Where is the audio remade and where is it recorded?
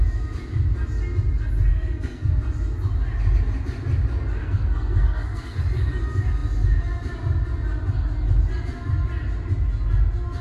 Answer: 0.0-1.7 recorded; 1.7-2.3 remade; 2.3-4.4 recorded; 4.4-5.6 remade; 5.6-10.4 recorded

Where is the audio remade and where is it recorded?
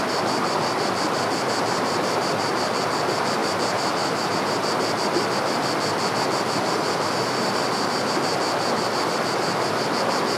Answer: 0.0-3.4 recorded; 3.4-4.3 remade; 4.3-10.4 recorded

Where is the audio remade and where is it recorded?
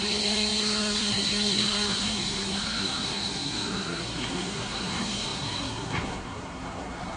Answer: 0.0-7.2 remade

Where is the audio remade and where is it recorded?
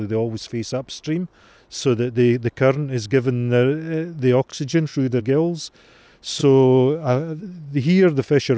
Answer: 0.0-4.5 recorded; 4.5-5.2 remade; 5.2-6.4 recorded; 6.4-7.4 remade; 7.4-8.6 recorded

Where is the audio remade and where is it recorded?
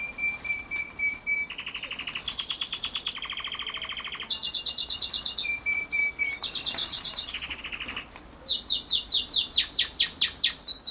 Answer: 0.0-6.8 recorded; 6.8-7.6 remade; 7.6-10.9 recorded